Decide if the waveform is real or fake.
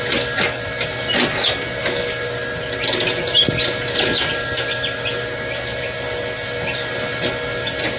real